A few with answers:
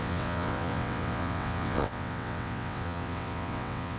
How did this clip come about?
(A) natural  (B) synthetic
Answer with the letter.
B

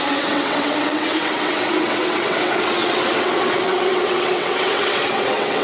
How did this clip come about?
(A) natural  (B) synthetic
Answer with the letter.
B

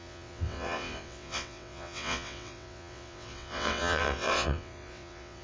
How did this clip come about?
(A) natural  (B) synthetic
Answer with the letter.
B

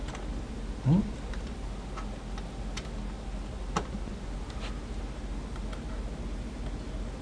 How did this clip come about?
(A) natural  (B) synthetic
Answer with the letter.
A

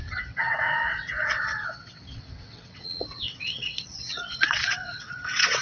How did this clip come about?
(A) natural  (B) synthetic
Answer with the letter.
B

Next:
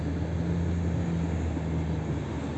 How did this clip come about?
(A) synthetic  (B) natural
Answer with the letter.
B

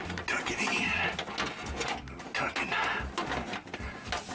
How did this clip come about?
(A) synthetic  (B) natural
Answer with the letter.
B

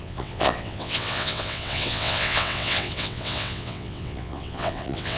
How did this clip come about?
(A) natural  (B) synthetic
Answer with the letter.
B